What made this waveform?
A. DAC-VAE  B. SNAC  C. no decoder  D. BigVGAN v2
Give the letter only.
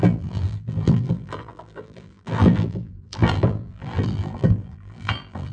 D